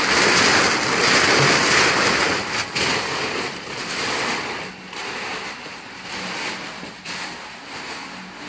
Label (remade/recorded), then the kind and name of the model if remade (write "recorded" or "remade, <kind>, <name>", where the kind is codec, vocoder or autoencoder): recorded